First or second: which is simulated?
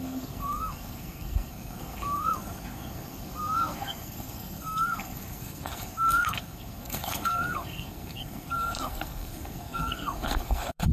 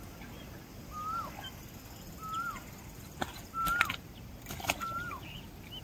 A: first